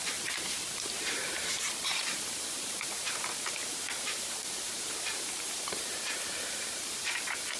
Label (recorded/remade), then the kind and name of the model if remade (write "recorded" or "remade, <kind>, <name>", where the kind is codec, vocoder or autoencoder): remade, vocoder, BigVGAN v2